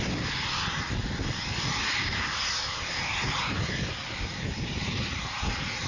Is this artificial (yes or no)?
no